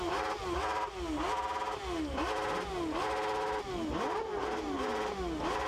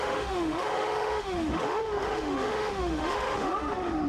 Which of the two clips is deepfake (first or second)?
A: second